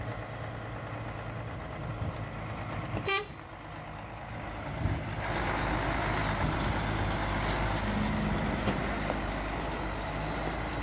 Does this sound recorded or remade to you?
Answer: recorded